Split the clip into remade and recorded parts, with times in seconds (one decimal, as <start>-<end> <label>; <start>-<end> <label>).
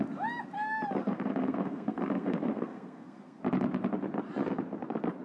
0.0-1.0 recorded; 1.0-3.4 remade; 3.4-5.2 recorded